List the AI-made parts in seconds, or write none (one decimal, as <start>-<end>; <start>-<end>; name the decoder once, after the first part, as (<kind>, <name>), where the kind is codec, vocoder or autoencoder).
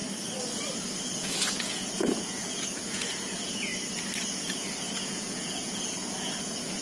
1.0-3.7 (vocoder, Vocos); 4.3-6.8